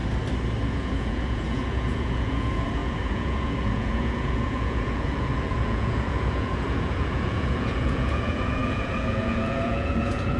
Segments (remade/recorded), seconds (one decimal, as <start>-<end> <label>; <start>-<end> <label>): 0.0-0.7 recorded; 0.7-10.4 remade